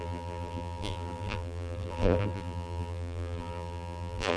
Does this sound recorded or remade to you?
remade